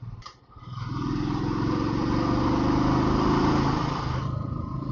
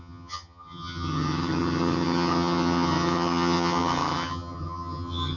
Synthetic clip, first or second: second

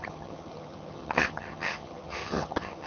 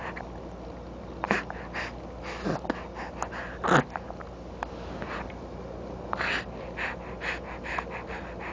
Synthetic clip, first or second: first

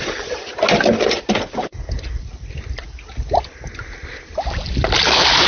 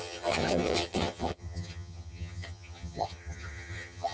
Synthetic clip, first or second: second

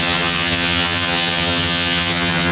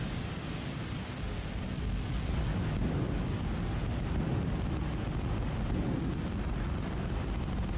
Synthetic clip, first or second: first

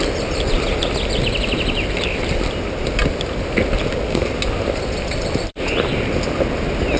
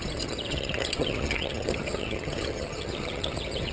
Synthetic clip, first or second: second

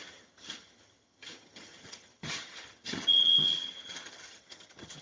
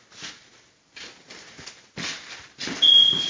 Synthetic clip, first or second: first